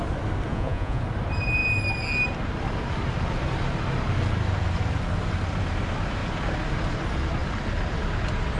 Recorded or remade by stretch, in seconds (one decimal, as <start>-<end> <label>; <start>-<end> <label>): 0.0-0.5 recorded; 0.5-1.0 remade; 1.0-8.6 recorded